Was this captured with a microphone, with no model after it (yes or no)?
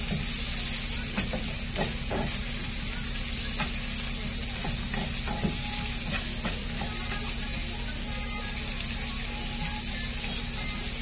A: yes